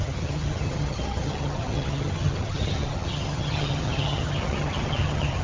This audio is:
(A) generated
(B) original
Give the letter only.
A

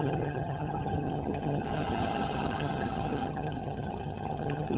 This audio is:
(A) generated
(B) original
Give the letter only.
A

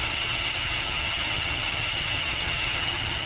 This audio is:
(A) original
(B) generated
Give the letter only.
B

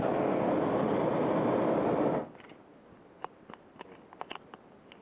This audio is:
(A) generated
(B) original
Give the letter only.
B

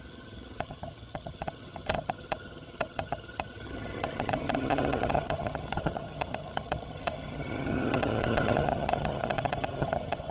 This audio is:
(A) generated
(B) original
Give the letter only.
A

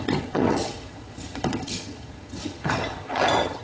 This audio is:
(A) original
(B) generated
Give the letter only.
B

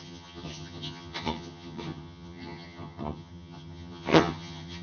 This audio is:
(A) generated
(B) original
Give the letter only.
A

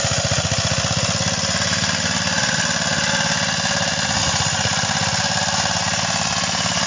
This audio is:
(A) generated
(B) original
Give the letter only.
B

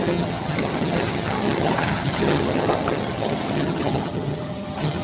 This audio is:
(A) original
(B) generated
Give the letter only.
B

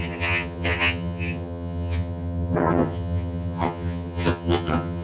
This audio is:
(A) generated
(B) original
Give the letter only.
A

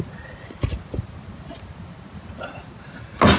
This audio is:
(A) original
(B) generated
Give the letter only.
A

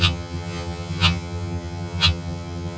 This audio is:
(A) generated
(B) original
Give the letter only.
A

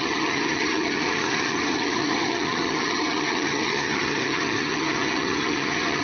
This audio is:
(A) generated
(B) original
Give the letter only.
A